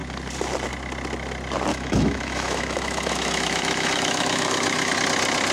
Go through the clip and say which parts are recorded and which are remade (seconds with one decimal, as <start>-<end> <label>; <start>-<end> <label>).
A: 0.0-1.7 recorded; 1.7-4.9 remade; 4.9-5.5 recorded